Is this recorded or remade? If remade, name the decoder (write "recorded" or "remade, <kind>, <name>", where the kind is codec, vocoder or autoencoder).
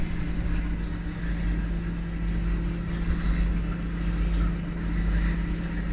recorded